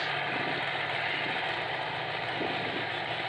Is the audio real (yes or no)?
yes